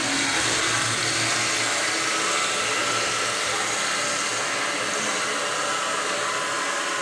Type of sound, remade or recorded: recorded